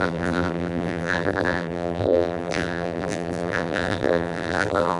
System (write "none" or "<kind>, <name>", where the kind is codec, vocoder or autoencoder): vocoder, BigVGAN v2